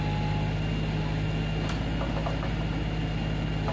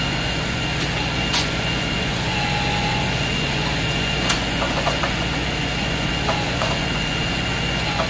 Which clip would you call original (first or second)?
first